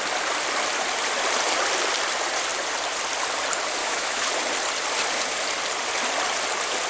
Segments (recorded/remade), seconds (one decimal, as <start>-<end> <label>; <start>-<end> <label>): 0.0-3.8 recorded; 3.8-4.3 remade; 4.3-6.9 recorded